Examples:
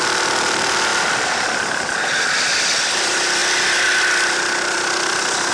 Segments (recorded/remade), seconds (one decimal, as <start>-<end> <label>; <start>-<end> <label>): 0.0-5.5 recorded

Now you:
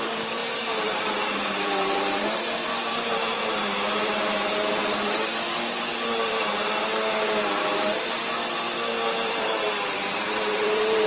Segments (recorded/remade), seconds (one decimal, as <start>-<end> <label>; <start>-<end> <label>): 0.0-8.2 remade; 8.2-9.2 recorded; 9.2-11.1 remade

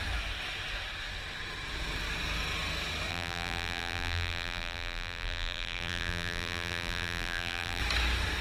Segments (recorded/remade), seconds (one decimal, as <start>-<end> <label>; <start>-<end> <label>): 0.0-3.1 recorded; 3.1-7.8 remade; 7.8-8.4 recorded

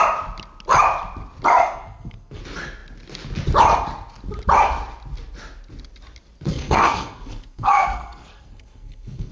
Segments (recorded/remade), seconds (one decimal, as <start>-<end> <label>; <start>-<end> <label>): 0.0-1.6 recorded; 1.6-2.4 remade; 2.4-6.5 recorded; 6.5-9.3 remade